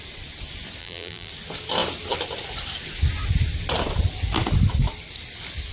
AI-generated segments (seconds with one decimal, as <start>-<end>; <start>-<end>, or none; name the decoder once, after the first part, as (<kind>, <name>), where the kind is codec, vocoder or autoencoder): 0.8-1.3 (vocoder, BigVGAN v2)